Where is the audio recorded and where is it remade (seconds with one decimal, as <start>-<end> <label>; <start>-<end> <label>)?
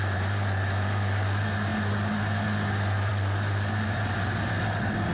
0.0-5.1 recorded